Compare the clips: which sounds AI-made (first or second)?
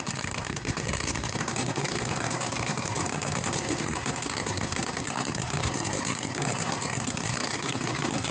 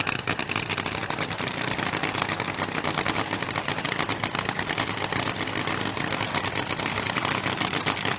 first